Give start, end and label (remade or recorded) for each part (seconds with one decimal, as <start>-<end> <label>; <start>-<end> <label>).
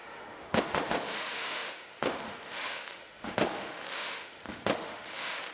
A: 0.0-5.5 remade